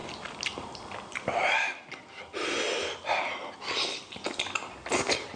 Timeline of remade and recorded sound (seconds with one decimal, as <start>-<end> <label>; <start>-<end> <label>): 0.0-5.4 recorded